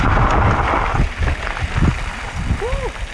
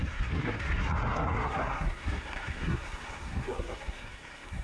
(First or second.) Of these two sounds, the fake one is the second